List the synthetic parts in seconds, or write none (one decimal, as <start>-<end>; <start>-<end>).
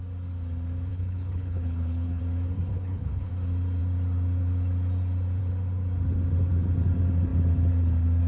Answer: 0.9-2.2; 2.7-3.3